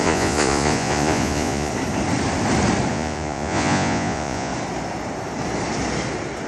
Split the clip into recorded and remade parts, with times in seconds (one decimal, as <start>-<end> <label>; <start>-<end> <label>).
0.0-1.7 remade; 1.7-2.9 recorded; 2.9-4.5 remade; 4.5-6.5 recorded